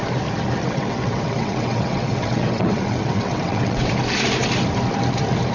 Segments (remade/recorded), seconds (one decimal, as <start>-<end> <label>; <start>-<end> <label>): 0.0-0.6 recorded; 0.6-3.9 remade; 3.9-5.5 recorded